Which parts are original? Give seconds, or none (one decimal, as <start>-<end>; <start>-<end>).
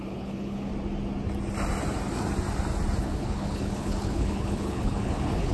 0.7-3.0